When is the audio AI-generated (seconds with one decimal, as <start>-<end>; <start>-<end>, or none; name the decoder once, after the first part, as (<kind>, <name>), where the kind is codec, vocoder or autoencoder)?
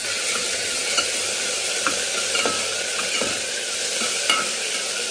0.0-1.0 (vocoder, WaveNeXt); 2.7-3.3